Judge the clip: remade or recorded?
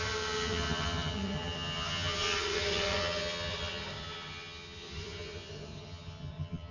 remade